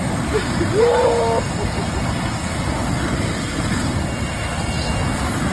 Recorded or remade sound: recorded